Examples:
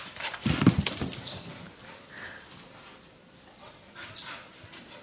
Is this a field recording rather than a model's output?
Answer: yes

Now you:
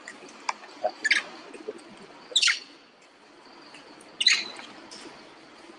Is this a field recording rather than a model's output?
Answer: yes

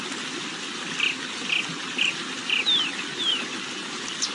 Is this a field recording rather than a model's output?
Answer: yes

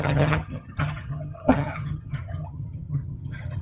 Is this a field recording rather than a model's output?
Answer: no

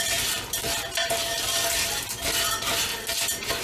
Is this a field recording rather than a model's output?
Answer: yes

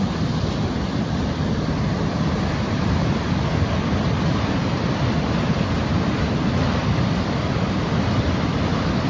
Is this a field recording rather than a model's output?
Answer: no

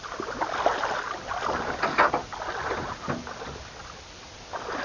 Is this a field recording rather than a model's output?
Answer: no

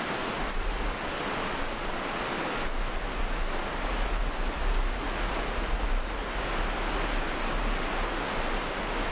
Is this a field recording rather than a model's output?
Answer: yes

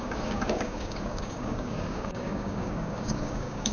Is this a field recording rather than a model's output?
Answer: no